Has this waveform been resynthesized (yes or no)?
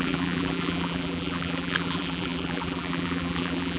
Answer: yes